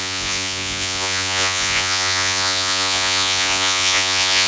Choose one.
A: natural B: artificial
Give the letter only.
B